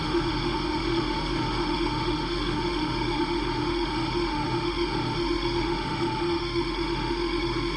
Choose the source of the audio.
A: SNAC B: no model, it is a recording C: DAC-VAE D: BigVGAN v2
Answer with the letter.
C